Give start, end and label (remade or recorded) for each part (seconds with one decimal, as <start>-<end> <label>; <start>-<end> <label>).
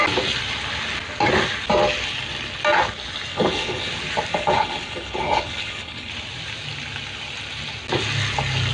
0.0-3.3 recorded; 3.3-3.9 remade; 3.9-4.3 recorded; 4.3-6.1 remade; 6.1-8.7 recorded